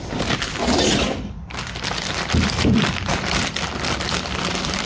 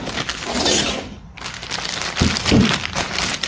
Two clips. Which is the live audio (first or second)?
second